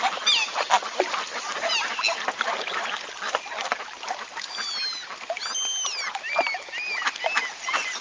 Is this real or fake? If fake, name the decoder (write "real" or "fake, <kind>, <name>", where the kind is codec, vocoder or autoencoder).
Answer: real